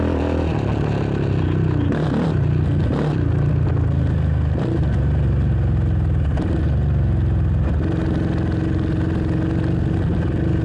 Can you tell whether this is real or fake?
real